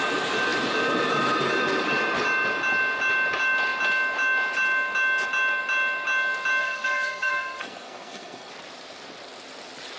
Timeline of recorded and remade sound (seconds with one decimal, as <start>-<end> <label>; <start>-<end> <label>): 0.0-6.6 recorded; 6.6-8.5 remade; 8.5-10.0 recorded